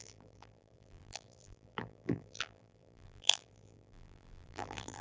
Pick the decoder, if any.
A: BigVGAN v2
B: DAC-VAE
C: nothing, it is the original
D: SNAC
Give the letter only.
A